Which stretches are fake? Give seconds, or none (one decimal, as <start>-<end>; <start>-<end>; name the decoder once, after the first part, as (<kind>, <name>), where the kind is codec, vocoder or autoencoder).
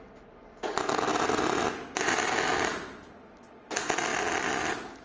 4.1-4.6 (vocoder, BigVGAN v2)